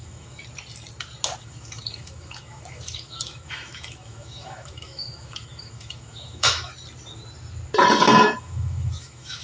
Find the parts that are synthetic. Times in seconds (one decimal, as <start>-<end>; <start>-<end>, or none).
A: 0.0-0.4; 1.4-6.7; 8.2-9.4